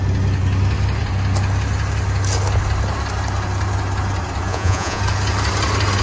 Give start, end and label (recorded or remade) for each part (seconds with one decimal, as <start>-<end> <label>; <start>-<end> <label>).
0.0-4.5 recorded; 4.5-5.0 remade; 5.0-6.0 recorded